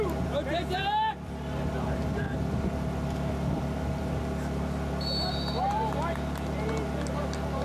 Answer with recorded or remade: recorded